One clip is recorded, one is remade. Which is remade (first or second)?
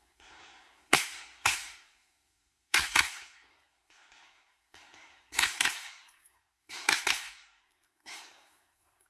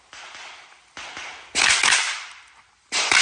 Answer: first